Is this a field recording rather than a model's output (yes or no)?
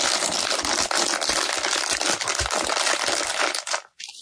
yes